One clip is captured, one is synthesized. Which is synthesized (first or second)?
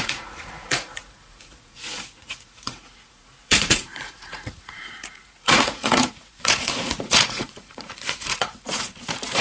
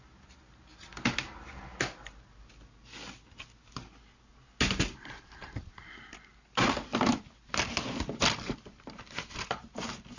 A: first